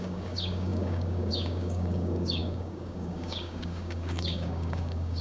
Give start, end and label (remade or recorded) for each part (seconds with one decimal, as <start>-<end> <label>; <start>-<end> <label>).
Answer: 0.0-5.2 remade